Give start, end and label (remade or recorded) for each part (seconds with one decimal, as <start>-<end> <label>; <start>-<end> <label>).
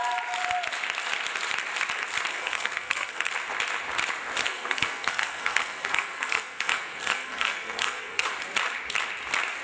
0.0-2.3 recorded; 2.3-3.3 remade; 3.3-4.4 recorded; 4.4-8.3 remade; 8.3-9.6 recorded